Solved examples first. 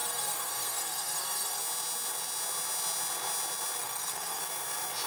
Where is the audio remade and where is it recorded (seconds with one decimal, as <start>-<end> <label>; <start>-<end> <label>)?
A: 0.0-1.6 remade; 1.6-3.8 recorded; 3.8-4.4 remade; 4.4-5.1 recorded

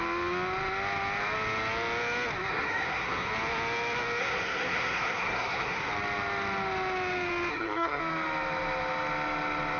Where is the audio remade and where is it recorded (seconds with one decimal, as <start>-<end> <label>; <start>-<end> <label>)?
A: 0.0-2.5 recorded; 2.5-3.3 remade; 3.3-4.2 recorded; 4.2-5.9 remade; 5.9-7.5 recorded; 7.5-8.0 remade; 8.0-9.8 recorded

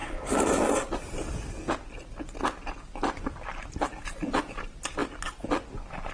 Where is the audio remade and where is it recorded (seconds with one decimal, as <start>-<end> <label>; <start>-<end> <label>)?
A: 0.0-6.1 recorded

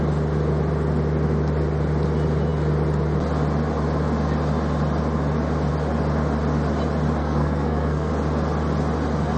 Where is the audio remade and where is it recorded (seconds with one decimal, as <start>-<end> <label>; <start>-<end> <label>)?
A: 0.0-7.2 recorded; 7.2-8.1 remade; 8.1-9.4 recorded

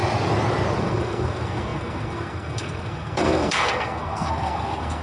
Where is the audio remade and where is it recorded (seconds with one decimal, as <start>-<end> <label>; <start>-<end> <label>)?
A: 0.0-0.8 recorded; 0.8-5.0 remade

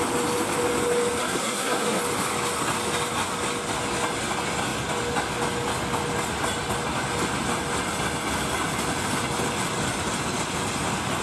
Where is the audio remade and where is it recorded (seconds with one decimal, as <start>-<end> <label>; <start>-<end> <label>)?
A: 0.0-1.2 recorded; 1.2-2.0 remade; 2.0-11.2 recorded

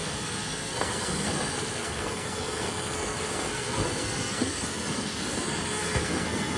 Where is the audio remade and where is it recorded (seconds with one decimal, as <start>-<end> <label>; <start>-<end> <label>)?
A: 0.0-6.6 remade

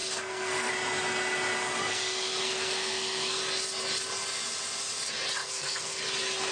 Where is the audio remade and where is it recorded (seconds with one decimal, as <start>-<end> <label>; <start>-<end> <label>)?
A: 0.0-0.7 remade; 0.7-1.8 recorded; 1.8-3.4 remade; 3.4-5.4 recorded; 5.4-6.0 remade; 6.0-6.5 recorded